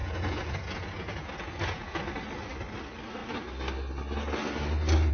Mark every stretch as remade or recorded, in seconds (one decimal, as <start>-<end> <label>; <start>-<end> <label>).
0.0-2.0 remade; 2.0-5.1 recorded